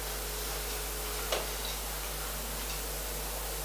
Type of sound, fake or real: real